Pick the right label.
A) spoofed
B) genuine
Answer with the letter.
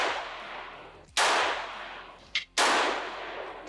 B